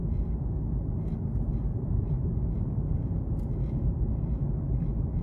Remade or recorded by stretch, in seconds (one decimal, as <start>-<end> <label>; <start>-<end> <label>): 0.0-1.7 recorded; 1.7-3.1 remade; 3.1-5.2 recorded